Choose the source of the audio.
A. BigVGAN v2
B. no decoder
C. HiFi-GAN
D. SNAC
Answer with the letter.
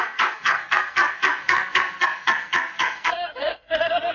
D